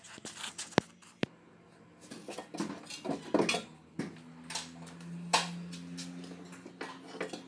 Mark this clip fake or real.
real